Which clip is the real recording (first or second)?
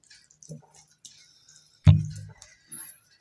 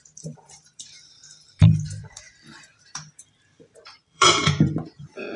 first